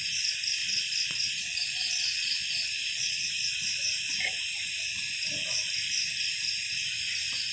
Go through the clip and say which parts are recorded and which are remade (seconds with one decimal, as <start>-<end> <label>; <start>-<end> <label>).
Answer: 0.0-0.6 recorded; 0.6-3.3 remade; 3.3-7.5 recorded